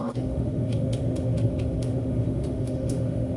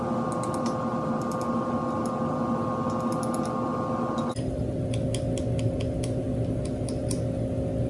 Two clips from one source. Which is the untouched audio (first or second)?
second